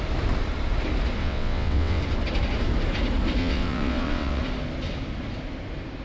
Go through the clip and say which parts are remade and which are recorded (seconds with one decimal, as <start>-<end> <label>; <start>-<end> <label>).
0.0-1.2 recorded; 1.2-2.0 remade; 2.0-3.4 recorded; 3.4-4.4 remade; 4.4-6.0 recorded